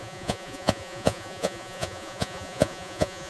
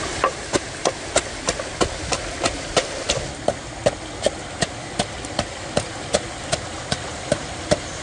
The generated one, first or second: first